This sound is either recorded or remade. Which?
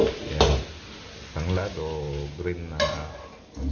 recorded